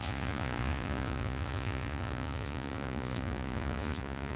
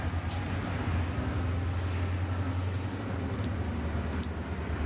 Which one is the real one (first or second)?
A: second